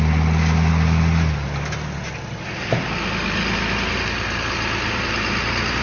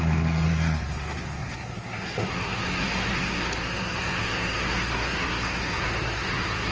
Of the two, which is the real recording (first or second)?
first